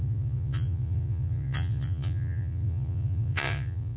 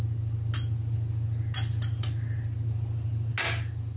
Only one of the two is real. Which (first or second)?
second